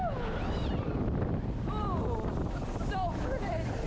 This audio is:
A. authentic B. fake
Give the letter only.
A